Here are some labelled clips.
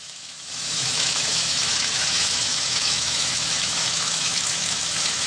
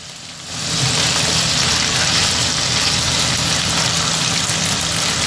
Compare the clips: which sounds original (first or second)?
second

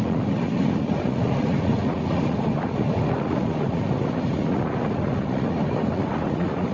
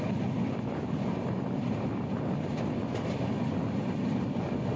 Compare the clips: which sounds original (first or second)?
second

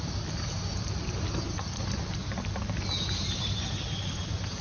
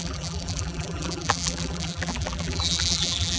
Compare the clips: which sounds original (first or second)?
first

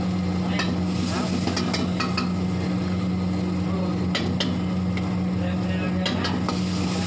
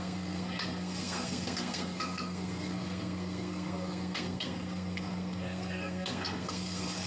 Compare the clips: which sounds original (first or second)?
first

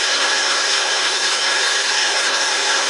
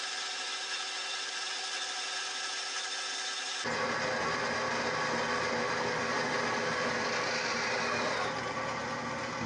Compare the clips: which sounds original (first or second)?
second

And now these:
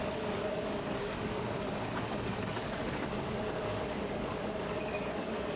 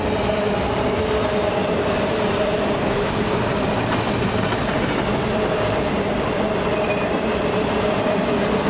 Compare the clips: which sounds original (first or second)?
second